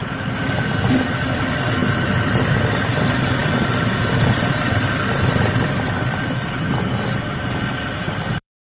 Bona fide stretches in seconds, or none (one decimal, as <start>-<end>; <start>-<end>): none